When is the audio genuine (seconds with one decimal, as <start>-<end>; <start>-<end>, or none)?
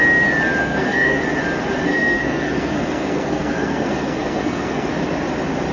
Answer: 0.0-0.6; 1.2-1.9; 4.9-5.7